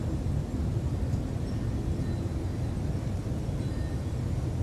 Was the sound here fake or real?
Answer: real